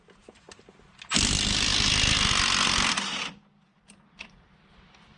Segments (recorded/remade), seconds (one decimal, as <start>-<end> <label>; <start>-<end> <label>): 0.0-5.2 recorded